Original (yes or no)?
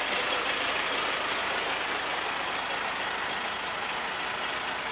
yes